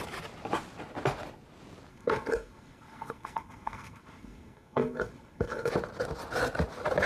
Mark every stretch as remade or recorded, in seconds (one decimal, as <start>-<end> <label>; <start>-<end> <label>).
0.0-1.9 recorded; 1.9-5.7 remade; 5.7-7.1 recorded

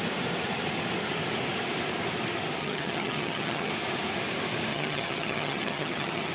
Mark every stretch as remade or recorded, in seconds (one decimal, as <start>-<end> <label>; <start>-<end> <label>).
0.0-2.6 recorded; 2.6-3.7 remade; 3.7-4.7 recorded; 4.7-6.3 remade

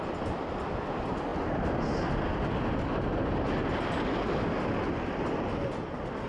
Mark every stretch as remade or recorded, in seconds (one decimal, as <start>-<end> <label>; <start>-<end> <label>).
0.0-6.3 recorded

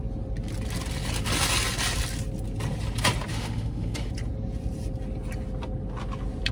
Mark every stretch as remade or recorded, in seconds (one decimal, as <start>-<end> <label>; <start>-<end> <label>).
0.0-3.3 recorded; 3.3-4.1 remade; 4.1-6.5 recorded

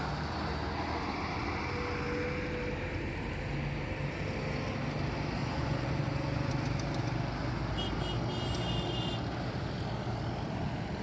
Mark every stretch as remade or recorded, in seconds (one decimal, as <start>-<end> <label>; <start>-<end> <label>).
0.0-5.4 recorded; 5.4-6.5 remade; 6.5-11.0 recorded

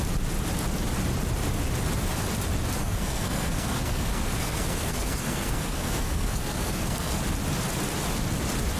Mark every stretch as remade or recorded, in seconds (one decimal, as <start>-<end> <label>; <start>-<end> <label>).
0.0-2.8 recorded; 2.8-7.2 remade; 7.2-8.8 recorded

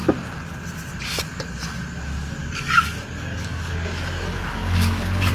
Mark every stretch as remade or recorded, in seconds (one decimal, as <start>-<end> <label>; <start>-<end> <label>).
0.0-2.4 recorded; 2.4-5.3 remade